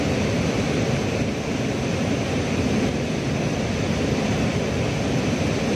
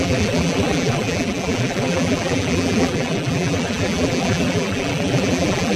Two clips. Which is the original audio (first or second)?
first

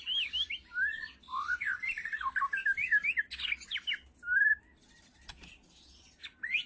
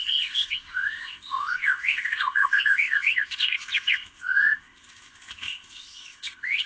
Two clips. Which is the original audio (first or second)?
first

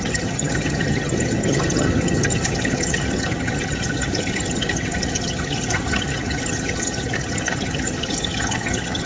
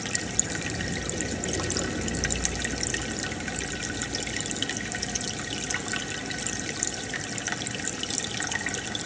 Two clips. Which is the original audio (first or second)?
second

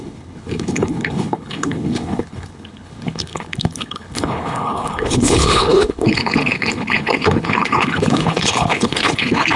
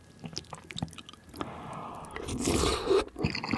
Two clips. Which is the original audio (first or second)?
second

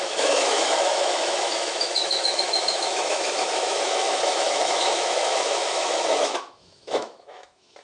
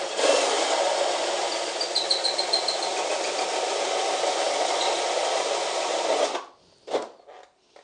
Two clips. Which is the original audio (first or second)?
second